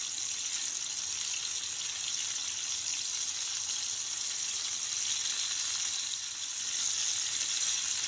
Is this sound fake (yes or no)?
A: no